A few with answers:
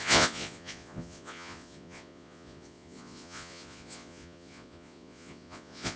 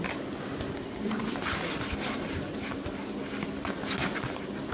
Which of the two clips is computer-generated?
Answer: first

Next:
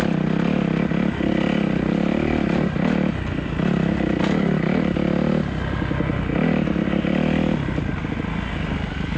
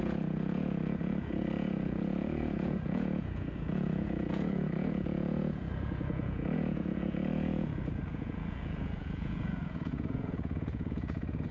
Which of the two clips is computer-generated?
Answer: second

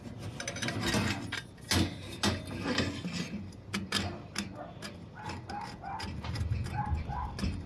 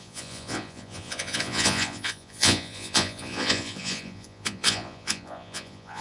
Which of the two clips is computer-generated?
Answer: second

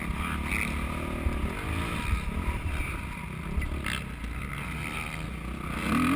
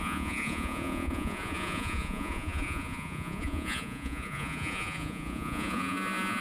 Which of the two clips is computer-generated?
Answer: second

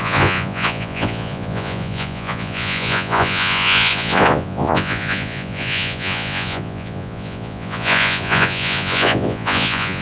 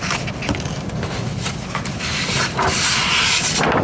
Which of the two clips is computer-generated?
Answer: first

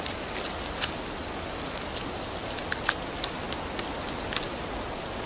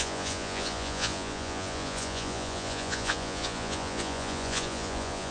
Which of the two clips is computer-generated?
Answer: second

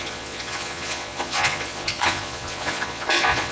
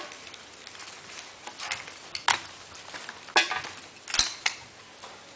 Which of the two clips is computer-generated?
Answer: first